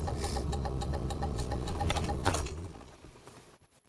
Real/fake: fake